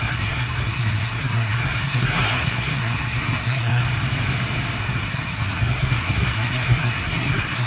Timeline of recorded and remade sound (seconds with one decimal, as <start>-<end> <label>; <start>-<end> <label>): 0.0-3.8 remade; 3.8-4.8 recorded; 4.8-7.7 remade